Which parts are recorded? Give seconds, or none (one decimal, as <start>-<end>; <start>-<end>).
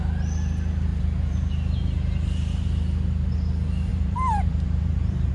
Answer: 0.0-0.9; 1.5-3.9